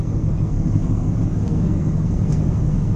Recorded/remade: remade